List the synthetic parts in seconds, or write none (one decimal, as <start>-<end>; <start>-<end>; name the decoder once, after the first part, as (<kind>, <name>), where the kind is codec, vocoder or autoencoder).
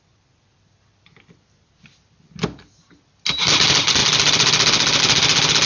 none